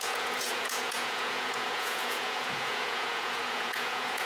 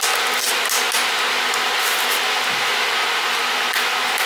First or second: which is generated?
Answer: first